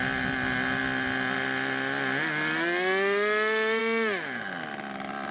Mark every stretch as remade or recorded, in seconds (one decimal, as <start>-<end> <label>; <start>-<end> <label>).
0.0-5.3 recorded